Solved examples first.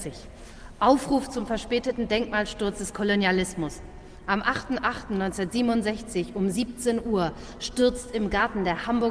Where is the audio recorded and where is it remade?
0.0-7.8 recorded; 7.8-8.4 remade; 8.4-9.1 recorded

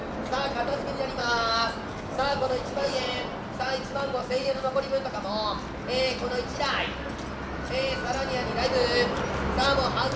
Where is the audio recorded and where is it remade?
0.0-1.2 recorded; 1.2-2.9 remade; 2.9-4.2 recorded; 4.2-4.7 remade; 4.7-10.2 recorded

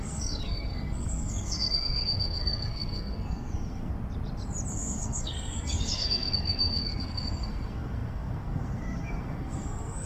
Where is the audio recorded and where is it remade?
0.0-3.9 remade; 3.9-4.7 recorded; 4.7-10.1 remade

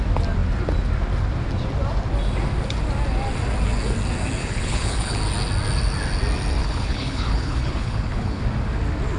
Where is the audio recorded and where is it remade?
0.0-4.4 recorded; 4.4-5.2 remade; 5.2-6.6 recorded; 6.6-8.4 remade; 8.4-9.2 recorded